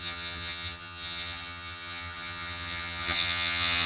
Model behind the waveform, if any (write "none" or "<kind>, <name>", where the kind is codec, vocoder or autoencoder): vocoder, HiFi-GAN